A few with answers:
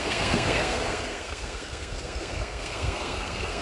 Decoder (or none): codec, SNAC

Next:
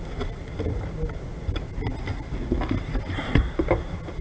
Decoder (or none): none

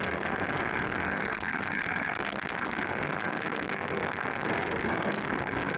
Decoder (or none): codec, SNAC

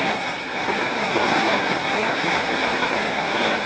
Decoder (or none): codec, SNAC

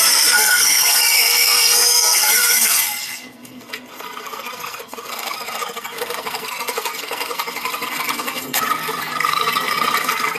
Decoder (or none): codec, SNAC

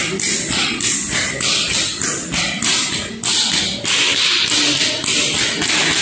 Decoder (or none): none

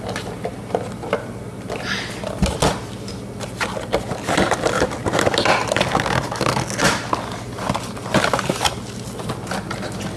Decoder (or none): none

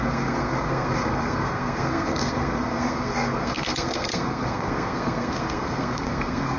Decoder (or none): codec, SNAC